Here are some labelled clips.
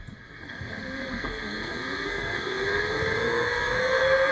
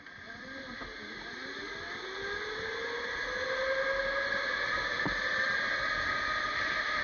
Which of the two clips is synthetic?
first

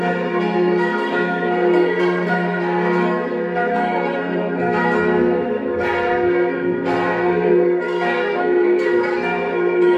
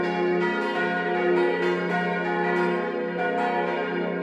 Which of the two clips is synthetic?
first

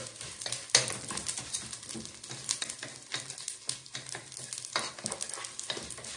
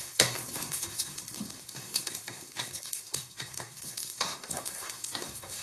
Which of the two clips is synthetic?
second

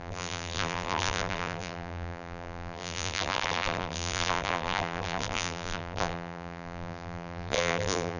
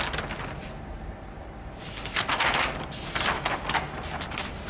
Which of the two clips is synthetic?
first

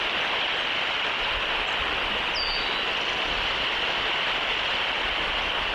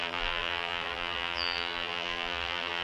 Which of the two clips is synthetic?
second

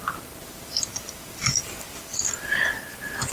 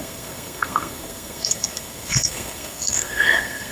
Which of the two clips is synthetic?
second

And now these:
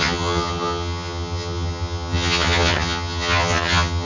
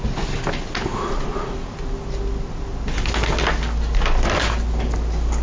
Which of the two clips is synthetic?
first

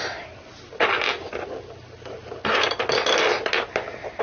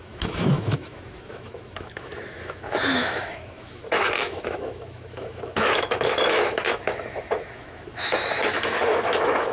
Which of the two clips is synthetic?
second